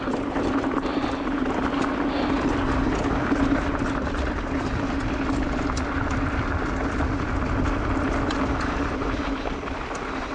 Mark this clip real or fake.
real